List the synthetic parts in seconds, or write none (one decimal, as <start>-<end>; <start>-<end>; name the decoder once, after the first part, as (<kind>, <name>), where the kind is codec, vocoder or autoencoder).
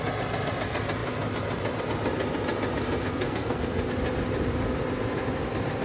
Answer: 3.1-3.8 (codec, SNAC)